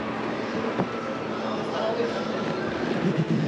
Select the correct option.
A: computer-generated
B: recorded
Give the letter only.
B